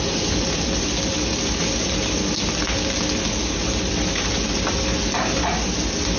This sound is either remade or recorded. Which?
recorded